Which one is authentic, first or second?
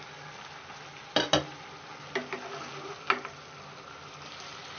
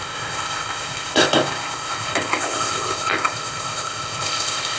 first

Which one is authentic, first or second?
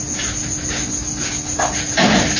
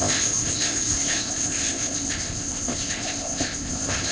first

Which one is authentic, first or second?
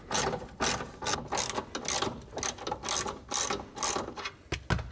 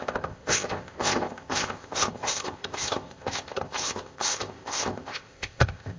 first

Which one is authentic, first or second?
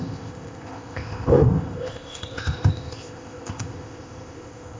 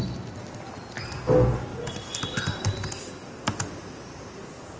second